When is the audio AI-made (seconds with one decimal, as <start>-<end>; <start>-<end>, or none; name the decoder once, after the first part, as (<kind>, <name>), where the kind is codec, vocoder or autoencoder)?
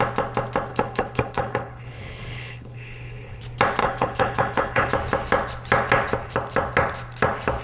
0.7-3.4 (codec, HILCodec); 3.8-4.9